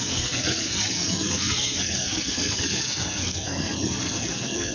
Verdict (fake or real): fake